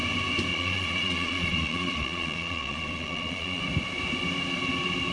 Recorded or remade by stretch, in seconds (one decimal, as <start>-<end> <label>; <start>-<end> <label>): 0.0-0.5 recorded; 0.5-3.6 remade; 3.6-5.1 recorded